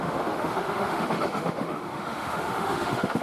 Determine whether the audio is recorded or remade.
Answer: remade